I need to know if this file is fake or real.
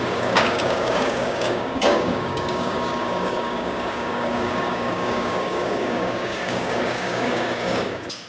fake